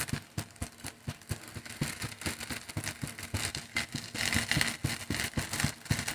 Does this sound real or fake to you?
real